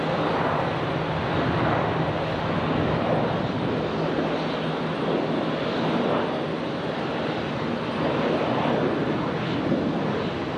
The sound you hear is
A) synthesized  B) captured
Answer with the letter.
B